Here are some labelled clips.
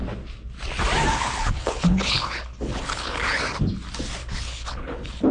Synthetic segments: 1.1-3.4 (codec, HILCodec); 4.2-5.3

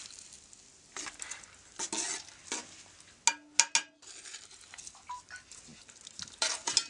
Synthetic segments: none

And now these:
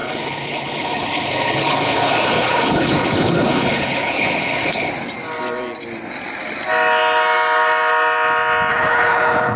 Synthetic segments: 0.0-4.9 (codec, HILCodec); 8.7-9.6

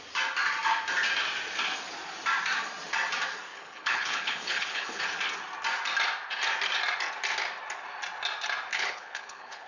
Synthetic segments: 3.5-5.0 (codec, HILCodec); 8.7-9.7

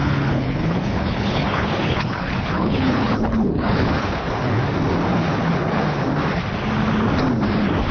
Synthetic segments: 0.0-4.6 (codec, HILCodec); 5.1-6.0

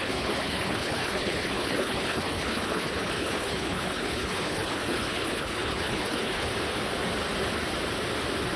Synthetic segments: 0.0-6.5 (codec, HILCodec)

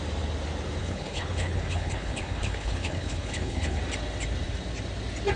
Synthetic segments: 0.8-3.8 (codec, HILCodec)

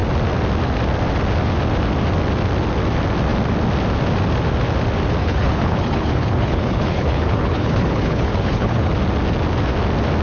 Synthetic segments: 5.2-8.9 (codec, HILCodec)